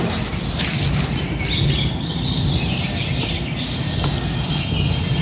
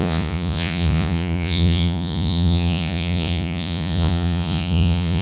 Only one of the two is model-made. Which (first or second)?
second